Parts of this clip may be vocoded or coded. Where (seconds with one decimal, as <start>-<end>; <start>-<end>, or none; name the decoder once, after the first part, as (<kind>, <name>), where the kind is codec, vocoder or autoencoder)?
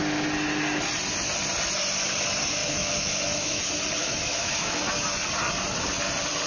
2.6-3.6 (autoencoder, DAC-VAE); 4.0-4.8